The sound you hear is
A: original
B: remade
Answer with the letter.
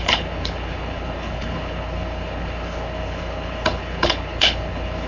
B